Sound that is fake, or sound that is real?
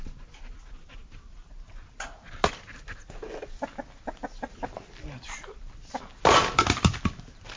real